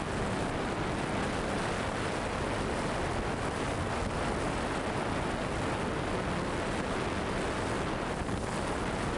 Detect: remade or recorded recorded